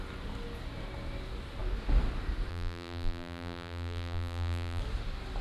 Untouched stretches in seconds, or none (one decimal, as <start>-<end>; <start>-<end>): 0.0-2.5; 4.8-5.4

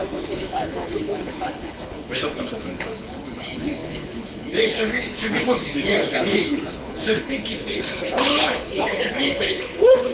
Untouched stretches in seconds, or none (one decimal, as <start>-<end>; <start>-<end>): none

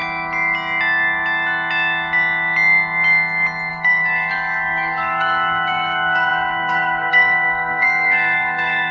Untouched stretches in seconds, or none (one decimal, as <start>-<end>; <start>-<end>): 0.0-3.7

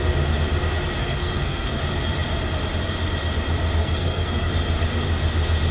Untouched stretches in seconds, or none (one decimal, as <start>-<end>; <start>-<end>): 0.0-1.0; 1.8-3.8; 4.5-5.7

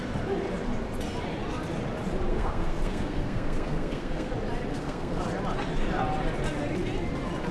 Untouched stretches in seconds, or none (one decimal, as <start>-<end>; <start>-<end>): 0.0-2.3; 4.3-4.7; 5.2-7.5

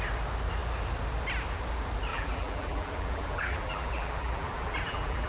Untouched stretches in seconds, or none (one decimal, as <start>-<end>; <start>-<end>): 0.0-2.1